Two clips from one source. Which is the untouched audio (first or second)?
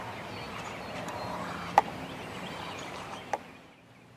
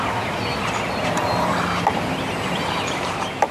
second